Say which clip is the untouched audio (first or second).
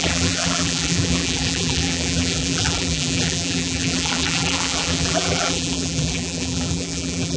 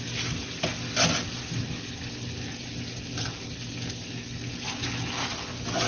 second